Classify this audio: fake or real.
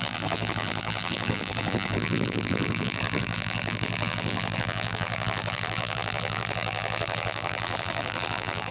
fake